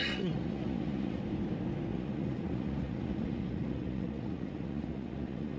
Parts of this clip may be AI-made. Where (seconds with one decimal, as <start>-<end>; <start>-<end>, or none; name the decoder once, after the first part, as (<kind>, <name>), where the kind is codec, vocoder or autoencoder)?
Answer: 0.0-1.2 (vocoder, Vocos); 1.9-5.6